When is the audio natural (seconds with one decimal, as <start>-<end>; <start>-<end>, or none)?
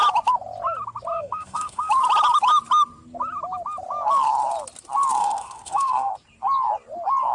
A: 0.0-1.1; 1.9-5.2; 6.1-7.3